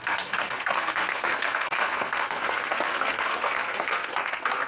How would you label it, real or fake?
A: fake